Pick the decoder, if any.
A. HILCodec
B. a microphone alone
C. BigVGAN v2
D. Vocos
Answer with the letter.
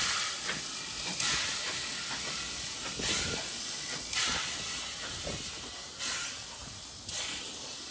B